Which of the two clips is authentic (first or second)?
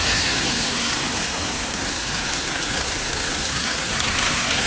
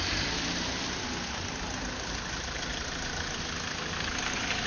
second